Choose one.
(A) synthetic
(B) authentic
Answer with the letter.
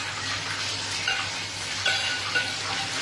B